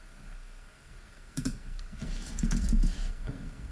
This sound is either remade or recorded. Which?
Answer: remade